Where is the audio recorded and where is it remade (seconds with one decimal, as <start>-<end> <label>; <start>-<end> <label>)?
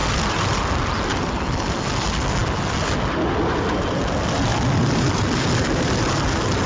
0.0-0.6 remade; 0.6-4.5 recorded; 4.5-6.3 remade; 6.3-6.7 recorded